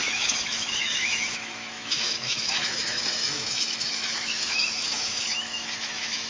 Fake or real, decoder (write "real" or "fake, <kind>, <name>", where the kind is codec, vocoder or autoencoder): fake, autoencoder, DAC-VAE